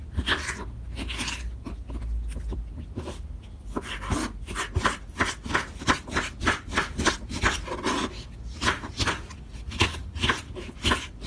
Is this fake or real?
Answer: real